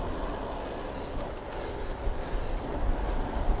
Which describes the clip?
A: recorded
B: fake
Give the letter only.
A